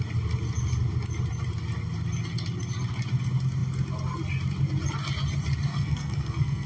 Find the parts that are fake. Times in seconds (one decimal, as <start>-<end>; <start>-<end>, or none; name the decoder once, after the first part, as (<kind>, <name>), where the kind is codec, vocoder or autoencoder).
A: 5.7-6.7 (codec, SNAC)

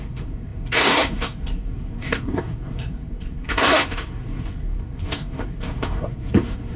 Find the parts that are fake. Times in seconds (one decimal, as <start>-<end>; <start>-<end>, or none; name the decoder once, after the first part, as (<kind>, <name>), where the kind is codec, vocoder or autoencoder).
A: 0.0-6.8 (codec, SNAC)

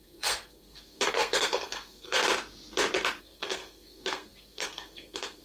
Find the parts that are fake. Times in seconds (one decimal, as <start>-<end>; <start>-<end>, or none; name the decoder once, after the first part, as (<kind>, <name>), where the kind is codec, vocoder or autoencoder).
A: 0.0-2.2 (codec, SNAC); 3.2-5.4